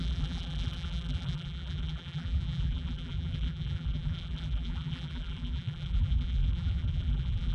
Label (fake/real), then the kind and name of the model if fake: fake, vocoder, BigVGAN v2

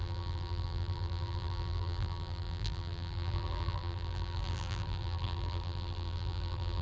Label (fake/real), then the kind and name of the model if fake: fake, vocoder, BigVGAN v2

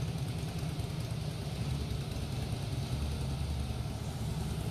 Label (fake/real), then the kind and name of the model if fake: real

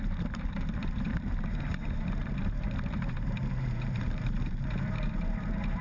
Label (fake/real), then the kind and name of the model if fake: fake, vocoder, BigVGAN v2